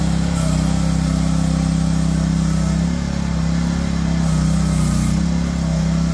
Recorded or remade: recorded